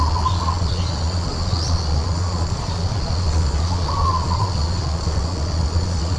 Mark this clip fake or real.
fake